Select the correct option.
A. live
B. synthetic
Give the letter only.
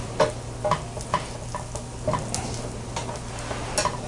A